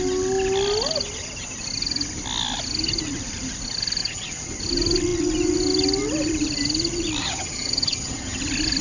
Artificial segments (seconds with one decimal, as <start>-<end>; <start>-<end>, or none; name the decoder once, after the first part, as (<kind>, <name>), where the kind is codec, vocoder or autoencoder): 4.0-4.6 (vocoder, HiFi-GAN); 7.2-8.4